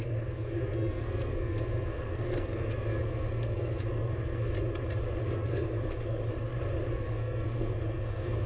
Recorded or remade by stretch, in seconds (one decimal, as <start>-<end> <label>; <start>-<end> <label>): 0.0-4.5 remade; 4.5-5.2 recorded; 5.2-6.2 remade; 6.2-6.9 recorded; 6.9-8.5 remade